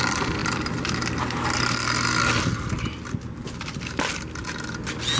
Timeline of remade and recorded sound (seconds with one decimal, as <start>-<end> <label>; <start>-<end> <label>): 0.0-5.2 recorded